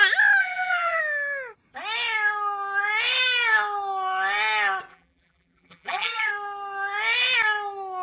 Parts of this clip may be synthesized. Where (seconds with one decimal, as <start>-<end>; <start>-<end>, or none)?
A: 0.4-1.0; 4.9-6.3